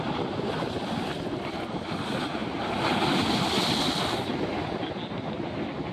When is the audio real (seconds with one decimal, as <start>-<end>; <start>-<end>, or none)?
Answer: 0.0-5.9